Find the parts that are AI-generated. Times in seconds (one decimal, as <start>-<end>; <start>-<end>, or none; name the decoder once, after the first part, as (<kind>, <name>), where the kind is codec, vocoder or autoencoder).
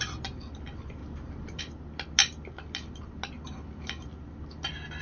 1.0-1.6 (vocoder, BigVGAN v2)